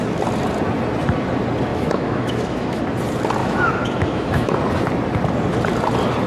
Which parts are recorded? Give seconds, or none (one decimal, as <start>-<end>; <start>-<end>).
0.0-1.7; 2.8-3.4; 4.6-6.3